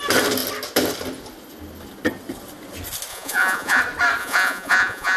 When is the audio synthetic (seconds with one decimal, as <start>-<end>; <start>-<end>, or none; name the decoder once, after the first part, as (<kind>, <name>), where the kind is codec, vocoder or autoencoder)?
3.1-3.8 (vocoder, Vocos); 4.2-5.2